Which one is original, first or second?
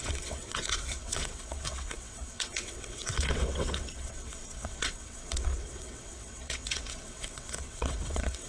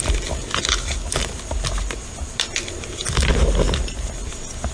second